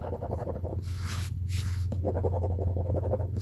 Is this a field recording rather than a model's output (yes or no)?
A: no